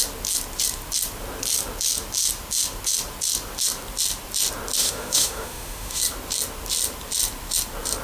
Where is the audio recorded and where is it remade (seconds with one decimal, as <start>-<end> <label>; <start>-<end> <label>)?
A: 0.0-4.8 recorded; 4.8-6.0 remade; 6.0-8.0 recorded